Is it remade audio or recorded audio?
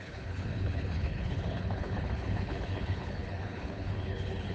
remade